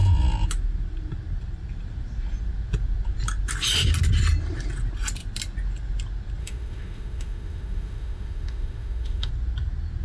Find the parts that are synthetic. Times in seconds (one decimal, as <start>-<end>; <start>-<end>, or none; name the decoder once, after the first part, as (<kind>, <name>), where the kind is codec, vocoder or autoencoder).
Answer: 6.4-9.3 (autoencoder, DAC-VAE)